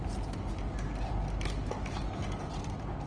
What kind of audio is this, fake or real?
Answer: real